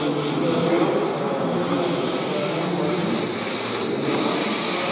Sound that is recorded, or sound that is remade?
recorded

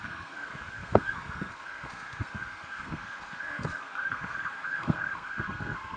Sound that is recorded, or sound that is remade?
remade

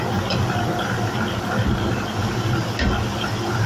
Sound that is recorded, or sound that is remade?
recorded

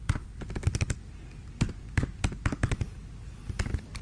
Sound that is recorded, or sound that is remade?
recorded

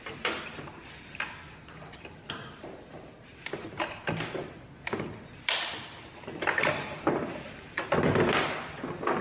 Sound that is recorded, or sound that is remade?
recorded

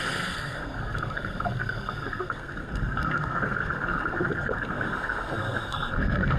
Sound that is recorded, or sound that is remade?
remade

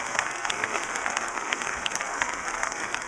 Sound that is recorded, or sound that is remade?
remade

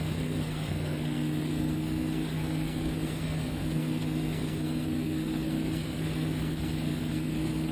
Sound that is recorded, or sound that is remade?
remade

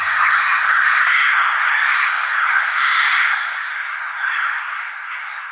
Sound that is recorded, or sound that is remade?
remade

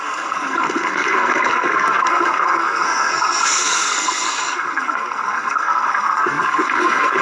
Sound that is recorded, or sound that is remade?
remade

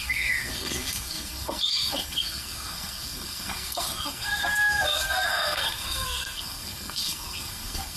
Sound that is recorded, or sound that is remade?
remade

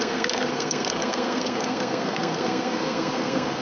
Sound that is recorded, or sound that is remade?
remade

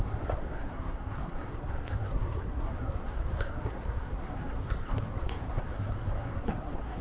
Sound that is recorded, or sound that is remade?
remade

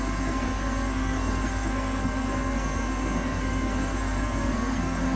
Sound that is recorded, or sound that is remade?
remade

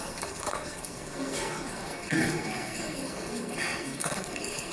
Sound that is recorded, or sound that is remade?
remade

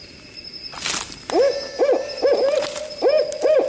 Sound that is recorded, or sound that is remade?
recorded